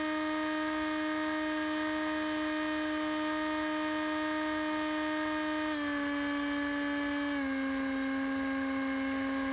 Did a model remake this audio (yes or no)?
no